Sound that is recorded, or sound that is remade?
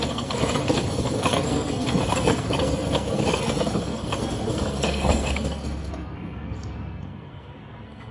remade